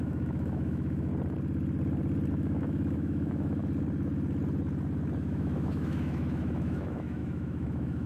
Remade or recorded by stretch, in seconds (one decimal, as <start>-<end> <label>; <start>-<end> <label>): 0.0-1.1 remade; 1.1-2.3 recorded; 2.3-3.6 remade; 3.6-5.2 recorded; 5.2-8.1 remade